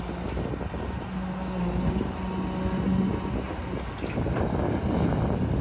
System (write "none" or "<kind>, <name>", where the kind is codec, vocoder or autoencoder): none